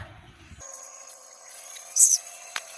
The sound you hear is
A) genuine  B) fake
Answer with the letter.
B